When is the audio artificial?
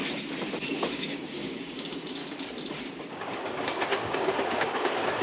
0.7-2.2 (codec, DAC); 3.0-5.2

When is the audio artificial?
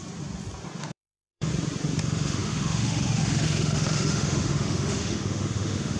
0.8-1.5 (autoencoder, DAC-VAE); 2.0-6.0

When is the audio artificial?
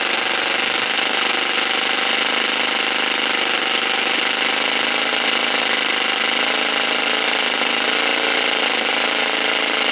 none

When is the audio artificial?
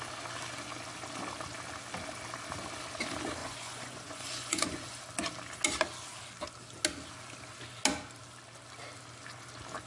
3.4-5.0 (vocoder, Vocos)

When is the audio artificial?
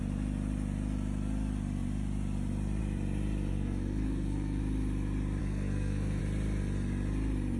3.5-4.6 (codec, SNAC); 5.4-6.2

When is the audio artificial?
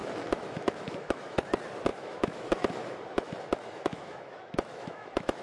0.0-1.4 (autoencoder, DAC-VAE); 1.9-5.4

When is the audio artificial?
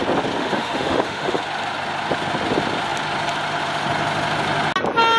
0.4-1.4 (autoencoder, DAC-VAE)